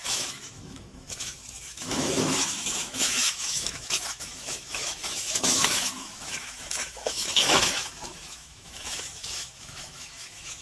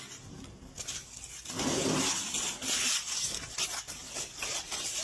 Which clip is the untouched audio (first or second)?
second